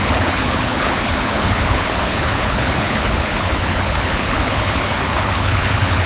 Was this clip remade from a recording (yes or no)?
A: yes